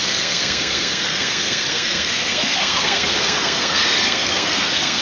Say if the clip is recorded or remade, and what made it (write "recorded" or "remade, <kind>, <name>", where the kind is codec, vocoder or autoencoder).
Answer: remade, codec, SNAC